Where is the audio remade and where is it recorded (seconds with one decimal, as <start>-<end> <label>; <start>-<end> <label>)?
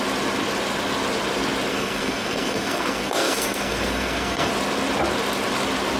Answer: 0.0-1.7 recorded; 1.7-4.5 remade; 4.5-6.0 recorded